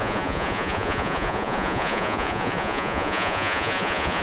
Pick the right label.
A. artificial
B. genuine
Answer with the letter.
A